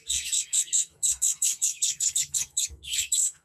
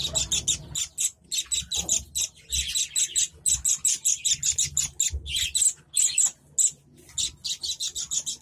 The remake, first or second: first